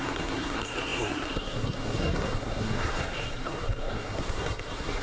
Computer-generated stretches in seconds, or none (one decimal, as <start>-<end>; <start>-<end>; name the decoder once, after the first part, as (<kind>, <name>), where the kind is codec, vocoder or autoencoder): 0.0-5.0 (codec, SNAC)